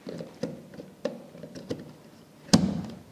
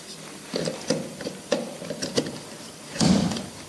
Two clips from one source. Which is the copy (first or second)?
second